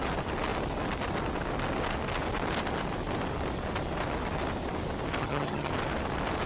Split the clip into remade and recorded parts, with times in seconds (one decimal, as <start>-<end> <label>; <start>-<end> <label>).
0.0-5.2 recorded; 5.2-5.7 remade; 5.7-6.5 recorded